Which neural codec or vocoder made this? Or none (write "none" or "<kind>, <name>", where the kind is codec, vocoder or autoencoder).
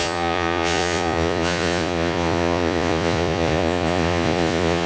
vocoder, Vocos